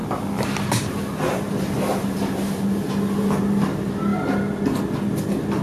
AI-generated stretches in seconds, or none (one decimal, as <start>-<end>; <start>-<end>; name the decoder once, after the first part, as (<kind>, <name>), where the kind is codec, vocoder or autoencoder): none